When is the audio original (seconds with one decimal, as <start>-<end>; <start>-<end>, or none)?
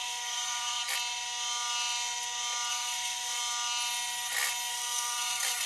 0.8-2.7; 3.4-4.7